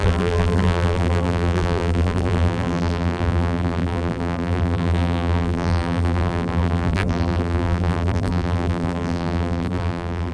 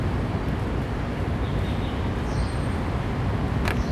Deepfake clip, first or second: first